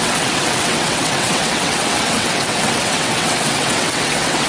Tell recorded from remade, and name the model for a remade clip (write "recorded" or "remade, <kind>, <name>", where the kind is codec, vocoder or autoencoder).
remade, vocoder, WaveNeXt